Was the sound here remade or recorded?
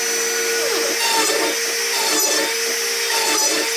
recorded